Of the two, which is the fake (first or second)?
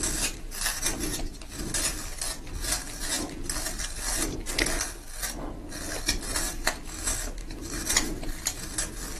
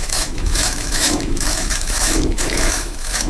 second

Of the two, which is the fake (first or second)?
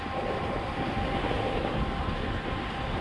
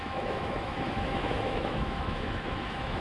second